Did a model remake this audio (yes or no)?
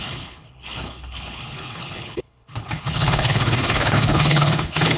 yes